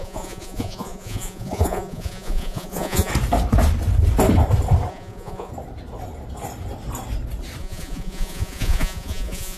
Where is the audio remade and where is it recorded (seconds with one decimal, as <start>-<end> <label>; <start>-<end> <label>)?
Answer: 0.0-3.1 remade; 3.1-4.9 recorded; 4.9-5.5 remade; 5.5-7.6 recorded; 7.6-9.6 remade